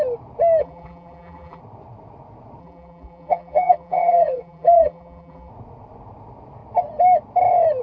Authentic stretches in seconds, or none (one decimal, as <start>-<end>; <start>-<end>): 0.0-0.6; 1.6-2.6; 5.5-7.8